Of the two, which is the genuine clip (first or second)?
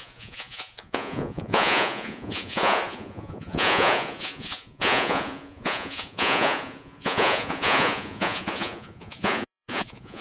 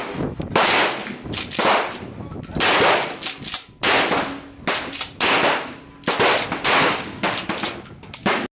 second